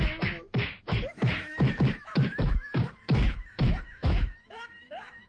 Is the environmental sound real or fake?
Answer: fake